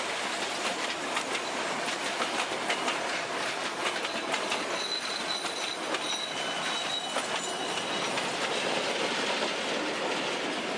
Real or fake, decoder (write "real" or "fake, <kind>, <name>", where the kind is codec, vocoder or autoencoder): real